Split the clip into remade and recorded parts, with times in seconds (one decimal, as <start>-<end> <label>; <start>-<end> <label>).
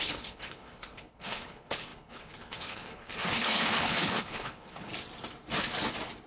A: 0.0-4.9 remade; 4.9-6.3 recorded